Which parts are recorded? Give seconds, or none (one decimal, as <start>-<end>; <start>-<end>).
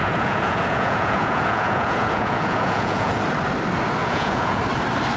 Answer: 3.1-4.0; 4.6-5.2